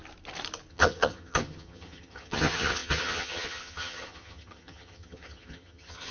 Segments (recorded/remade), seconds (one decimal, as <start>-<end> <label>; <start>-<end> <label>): 0.0-0.7 recorded; 0.7-6.1 remade